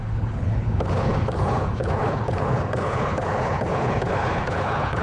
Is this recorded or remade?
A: remade